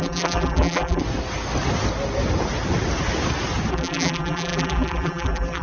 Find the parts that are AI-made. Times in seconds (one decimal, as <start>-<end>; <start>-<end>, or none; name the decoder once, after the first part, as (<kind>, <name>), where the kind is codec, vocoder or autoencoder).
0.0-1.0 (vocoder, BigVGAN v2); 3.7-5.6